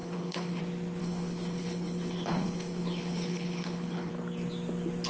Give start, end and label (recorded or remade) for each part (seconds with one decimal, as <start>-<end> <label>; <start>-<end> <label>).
0.0-0.6 remade; 0.6-1.0 recorded; 1.0-4.1 remade; 4.1-5.1 recorded